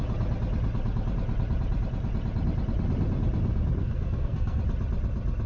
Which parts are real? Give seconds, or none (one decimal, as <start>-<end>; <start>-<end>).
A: 0.0-3.8; 4.6-5.5